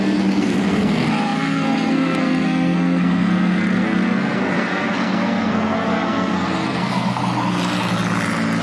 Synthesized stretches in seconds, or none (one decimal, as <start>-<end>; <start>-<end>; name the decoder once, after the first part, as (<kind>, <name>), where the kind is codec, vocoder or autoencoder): 0.0-7.2 (codec, SNAC)